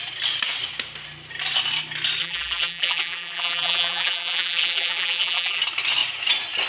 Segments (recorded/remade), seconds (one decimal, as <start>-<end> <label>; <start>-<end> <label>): 0.0-2.2 recorded; 2.2-5.6 remade; 5.6-6.7 recorded